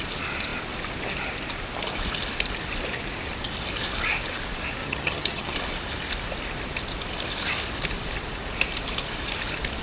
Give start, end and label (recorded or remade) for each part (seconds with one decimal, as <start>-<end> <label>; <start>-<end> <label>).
0.0-4.8 recorded; 4.8-5.5 remade; 5.5-9.8 recorded